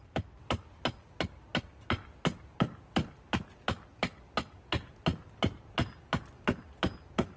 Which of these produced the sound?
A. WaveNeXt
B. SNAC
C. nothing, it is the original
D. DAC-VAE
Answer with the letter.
C